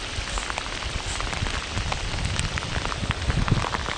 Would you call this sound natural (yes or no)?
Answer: yes